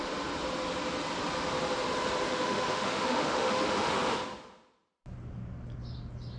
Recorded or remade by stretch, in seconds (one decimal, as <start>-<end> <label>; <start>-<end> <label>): 0.0-2.3 recorded; 2.3-4.2 remade; 4.2-6.4 recorded